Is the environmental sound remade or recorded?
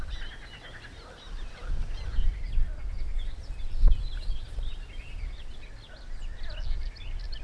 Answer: recorded